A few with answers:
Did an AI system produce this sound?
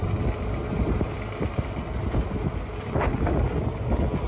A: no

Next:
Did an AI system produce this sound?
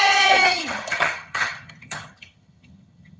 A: yes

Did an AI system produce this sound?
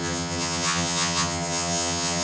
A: yes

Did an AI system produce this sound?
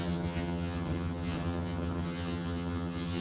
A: yes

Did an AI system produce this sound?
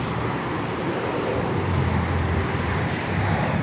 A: no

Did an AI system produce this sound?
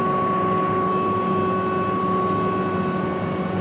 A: no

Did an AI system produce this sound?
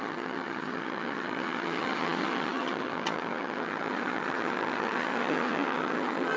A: yes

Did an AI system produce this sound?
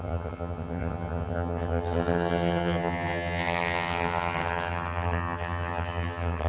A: yes